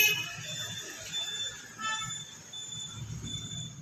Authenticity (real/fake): real